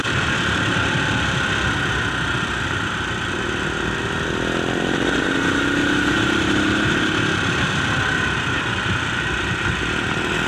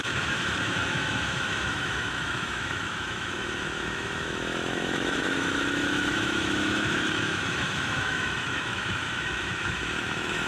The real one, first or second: first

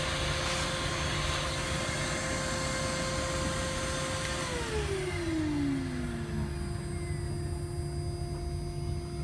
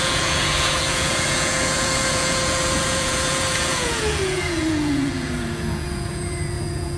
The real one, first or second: first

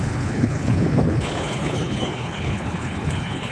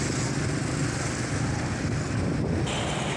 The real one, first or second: second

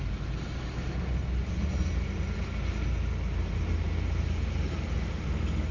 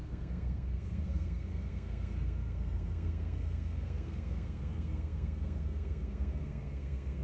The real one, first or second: first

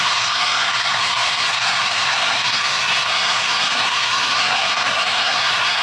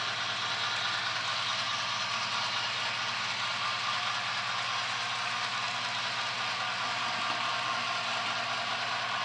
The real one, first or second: second